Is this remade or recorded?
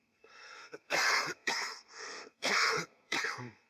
remade